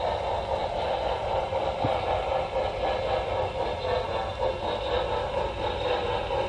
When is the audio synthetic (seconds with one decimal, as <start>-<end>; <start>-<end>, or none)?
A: none